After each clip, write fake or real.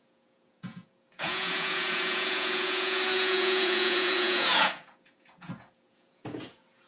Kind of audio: fake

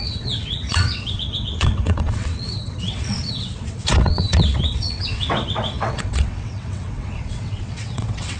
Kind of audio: fake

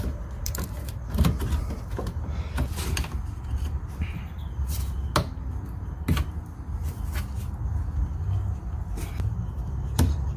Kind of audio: real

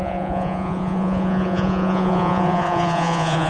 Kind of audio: fake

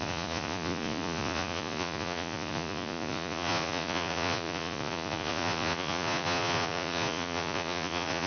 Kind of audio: fake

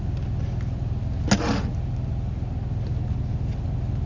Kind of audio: real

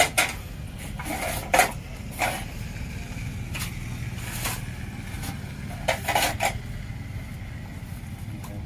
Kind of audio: real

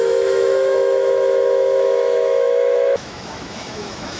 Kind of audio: fake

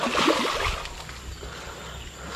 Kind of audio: real